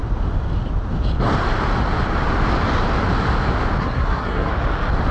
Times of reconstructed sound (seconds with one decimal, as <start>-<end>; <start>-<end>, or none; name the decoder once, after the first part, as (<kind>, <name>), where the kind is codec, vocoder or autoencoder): 3.8-4.5 (codec, SNAC)